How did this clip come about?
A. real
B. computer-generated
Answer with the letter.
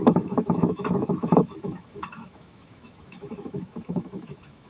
B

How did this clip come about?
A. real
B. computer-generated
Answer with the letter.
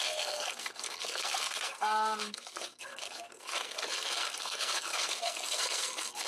B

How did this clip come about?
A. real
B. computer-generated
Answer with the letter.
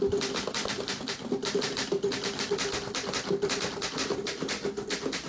A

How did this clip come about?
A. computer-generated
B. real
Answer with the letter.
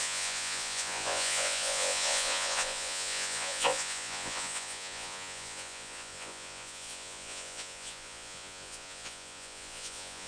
A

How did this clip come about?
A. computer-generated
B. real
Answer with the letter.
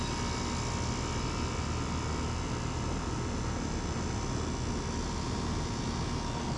B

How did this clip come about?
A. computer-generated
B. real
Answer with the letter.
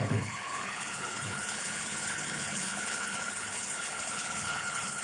A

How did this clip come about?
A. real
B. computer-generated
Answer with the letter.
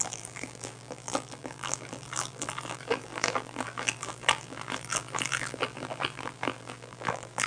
B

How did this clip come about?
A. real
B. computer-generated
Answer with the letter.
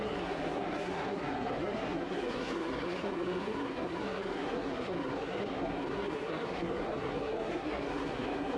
B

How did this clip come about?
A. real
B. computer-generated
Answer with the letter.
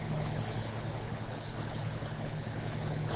B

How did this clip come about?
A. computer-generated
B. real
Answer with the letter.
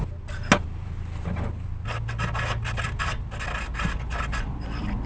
B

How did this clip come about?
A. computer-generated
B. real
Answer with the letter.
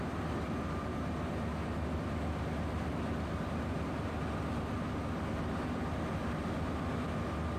B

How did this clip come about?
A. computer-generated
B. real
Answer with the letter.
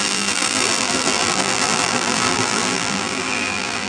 A